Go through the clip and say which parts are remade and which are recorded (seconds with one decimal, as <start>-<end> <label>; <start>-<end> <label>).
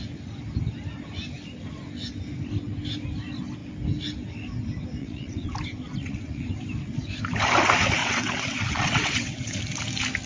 0.0-5.0 recorded; 5.0-5.5 remade; 5.5-6.0 recorded; 6.0-6.5 remade; 6.5-8.0 recorded; 8.0-9.6 remade; 9.6-10.3 recorded